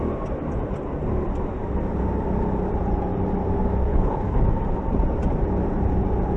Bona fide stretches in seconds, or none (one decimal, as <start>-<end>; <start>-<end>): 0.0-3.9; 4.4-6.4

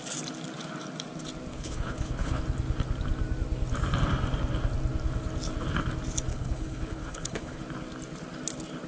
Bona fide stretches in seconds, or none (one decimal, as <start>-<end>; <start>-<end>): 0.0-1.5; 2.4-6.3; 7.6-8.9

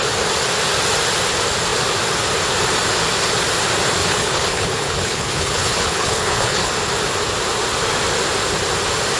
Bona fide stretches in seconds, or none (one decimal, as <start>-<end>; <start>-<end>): 0.0-4.0; 6.7-9.2